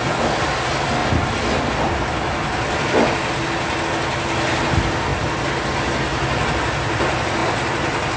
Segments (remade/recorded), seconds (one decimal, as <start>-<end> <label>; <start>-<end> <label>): 0.0-8.2 recorded